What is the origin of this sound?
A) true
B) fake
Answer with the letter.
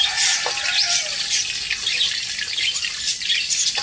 A